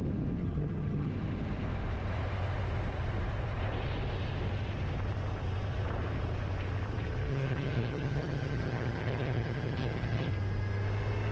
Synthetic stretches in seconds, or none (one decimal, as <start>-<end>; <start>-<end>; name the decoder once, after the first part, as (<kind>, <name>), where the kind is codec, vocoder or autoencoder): 0.4-1.1 (vocoder, HiFi-GAN); 7.3-10.3